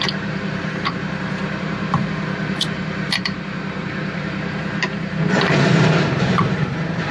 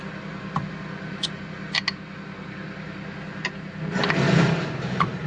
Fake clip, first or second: first